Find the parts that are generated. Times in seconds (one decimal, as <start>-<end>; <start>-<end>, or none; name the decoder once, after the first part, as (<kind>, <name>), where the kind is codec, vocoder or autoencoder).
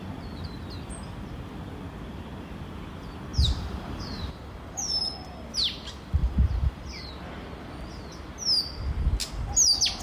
3.3-5.0 (vocoder, BigVGAN v2); 6.2-7.1